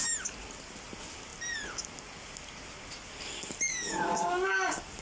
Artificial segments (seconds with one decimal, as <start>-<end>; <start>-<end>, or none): 3.7-4.5